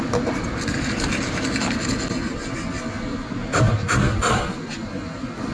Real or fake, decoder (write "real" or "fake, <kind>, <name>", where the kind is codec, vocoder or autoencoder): real